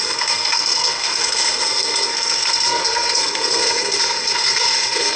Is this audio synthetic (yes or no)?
yes